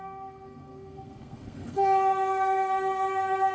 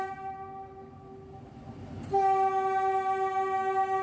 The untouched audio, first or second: second